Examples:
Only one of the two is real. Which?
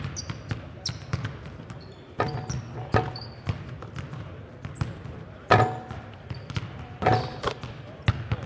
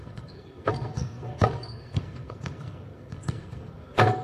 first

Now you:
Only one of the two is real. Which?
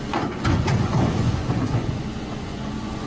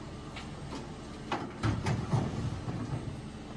second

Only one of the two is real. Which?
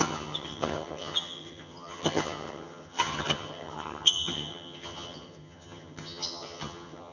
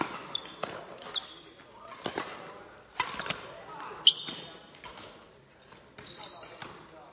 second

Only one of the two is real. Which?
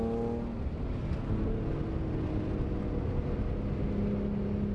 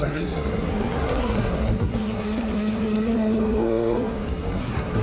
first